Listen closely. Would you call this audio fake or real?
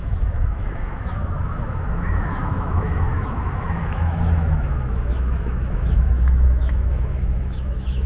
fake